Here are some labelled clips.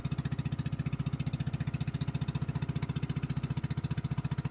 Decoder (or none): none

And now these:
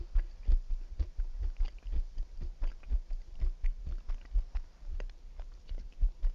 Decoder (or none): none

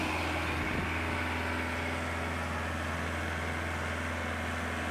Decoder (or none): none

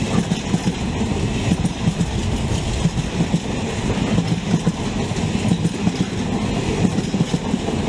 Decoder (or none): none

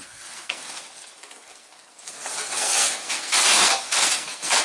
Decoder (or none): codec, SNAC